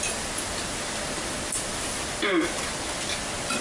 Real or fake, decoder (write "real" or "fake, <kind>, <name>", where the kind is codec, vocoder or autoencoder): real